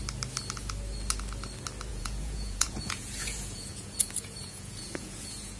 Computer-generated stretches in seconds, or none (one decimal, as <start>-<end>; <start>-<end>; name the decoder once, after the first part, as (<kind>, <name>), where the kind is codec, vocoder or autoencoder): 1.9-5.6 (vocoder, Vocos)